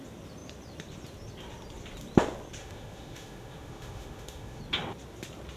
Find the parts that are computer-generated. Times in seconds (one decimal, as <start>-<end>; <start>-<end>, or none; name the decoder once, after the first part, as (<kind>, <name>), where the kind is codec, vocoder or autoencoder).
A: 2.6-4.6 (autoencoder, DAC-VAE)